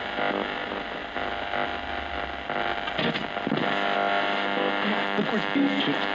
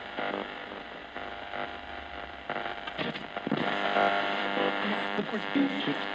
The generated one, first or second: second